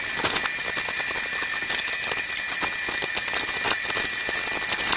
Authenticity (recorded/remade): recorded